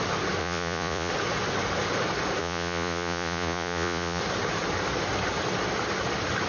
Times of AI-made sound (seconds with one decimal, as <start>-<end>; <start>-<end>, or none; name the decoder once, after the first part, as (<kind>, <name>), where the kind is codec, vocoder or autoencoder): 0.4-1.1 (vocoder, Vocos); 2.4-4.2